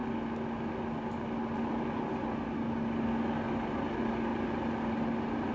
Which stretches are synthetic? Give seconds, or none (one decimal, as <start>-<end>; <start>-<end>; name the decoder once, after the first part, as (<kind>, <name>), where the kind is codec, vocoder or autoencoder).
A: none